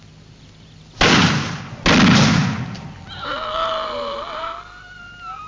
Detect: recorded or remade recorded